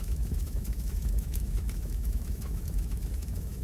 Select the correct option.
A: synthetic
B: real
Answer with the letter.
A